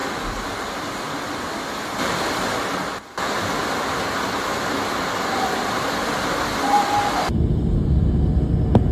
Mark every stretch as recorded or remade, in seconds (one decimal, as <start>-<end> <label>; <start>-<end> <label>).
0.0-8.9 recorded